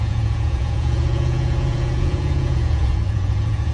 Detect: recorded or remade remade